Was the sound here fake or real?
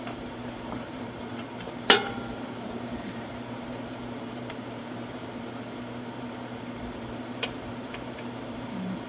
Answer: fake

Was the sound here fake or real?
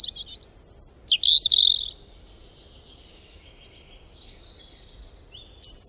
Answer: real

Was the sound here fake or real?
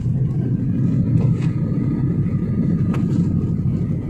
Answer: fake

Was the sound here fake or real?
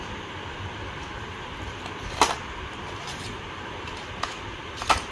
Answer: real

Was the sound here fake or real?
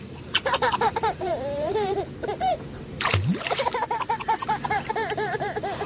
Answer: fake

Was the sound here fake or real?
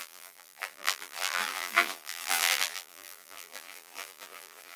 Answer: fake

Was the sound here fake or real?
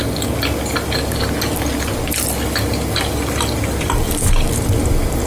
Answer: real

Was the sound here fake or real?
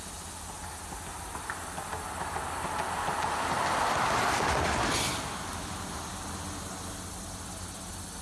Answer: real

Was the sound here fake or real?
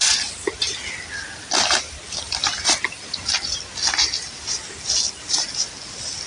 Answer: real